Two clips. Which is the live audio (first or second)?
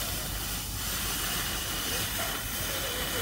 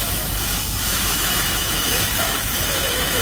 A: first